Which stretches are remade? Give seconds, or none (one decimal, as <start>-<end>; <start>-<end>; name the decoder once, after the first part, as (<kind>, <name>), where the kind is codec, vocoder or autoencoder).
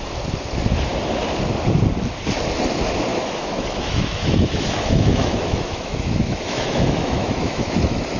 3.1-8.2 (autoencoder, DAC-VAE)